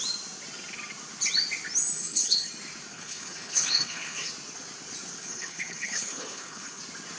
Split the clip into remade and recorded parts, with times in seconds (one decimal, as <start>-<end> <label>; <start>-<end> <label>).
0.0-2.0 recorded; 2.0-2.5 remade; 2.5-2.9 recorded; 2.9-4.3 remade; 4.3-5.2 recorded; 5.2-6.8 remade; 6.8-7.2 recorded